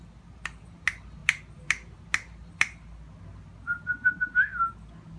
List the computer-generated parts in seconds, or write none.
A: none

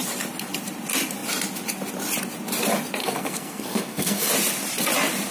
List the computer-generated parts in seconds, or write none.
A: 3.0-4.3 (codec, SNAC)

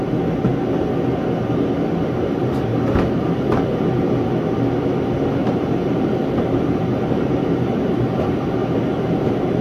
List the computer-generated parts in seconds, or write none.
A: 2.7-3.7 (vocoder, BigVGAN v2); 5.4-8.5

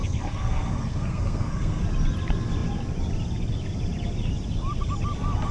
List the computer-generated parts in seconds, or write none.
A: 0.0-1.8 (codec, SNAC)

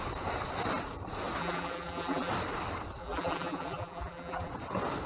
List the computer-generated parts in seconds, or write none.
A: 1.4-2.3 (vocoder, BigVGAN v2); 3.0-4.5